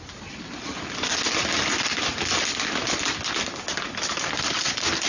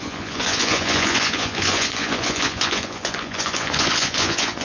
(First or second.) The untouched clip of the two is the first